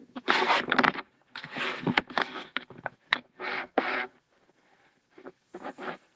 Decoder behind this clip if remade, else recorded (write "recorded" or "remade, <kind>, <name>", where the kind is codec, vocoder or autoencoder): remade, codec, SNAC